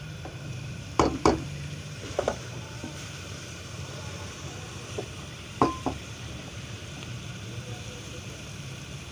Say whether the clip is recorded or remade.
remade